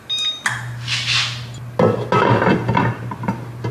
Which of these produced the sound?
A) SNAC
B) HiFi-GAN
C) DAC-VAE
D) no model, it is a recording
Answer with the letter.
D